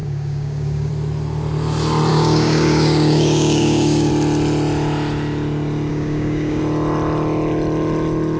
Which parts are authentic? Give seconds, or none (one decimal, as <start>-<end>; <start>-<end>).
0.9-2.1; 4.1-5.9; 6.6-8.4